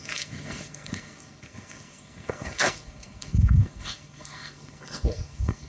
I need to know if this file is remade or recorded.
remade